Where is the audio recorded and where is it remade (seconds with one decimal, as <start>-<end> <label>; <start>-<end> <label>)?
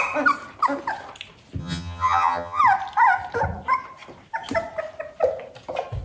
0.0-1.6 recorded; 1.6-2.6 remade; 2.6-6.0 recorded